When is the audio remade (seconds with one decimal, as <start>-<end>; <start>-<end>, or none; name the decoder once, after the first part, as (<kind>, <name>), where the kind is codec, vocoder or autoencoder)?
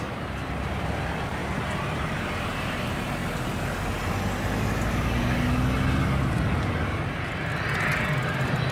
0.0-1.4 (vocoder, BigVGAN v2); 1.9-3.2